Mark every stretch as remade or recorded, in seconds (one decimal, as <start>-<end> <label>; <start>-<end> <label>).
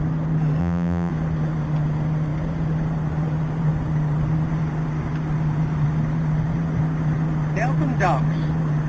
0.0-0.6 recorded; 0.6-1.1 remade; 1.1-8.9 recorded